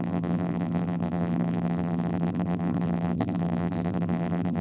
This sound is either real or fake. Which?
fake